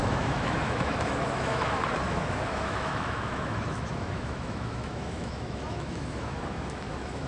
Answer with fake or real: fake